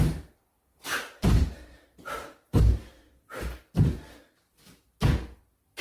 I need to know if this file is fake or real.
real